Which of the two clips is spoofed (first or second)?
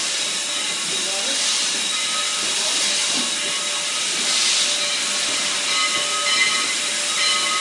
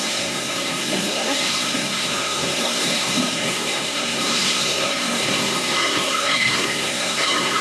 second